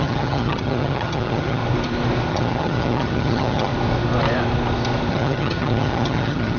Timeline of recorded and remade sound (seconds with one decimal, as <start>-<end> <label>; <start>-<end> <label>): 0.0-1.6 remade; 1.6-2.3 recorded; 2.3-3.7 remade; 3.7-5.1 recorded; 5.1-6.6 remade